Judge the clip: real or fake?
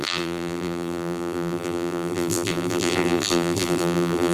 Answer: fake